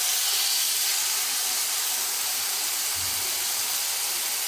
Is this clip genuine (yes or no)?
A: yes